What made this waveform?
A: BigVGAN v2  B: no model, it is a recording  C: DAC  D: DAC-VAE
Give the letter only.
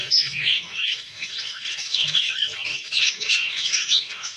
C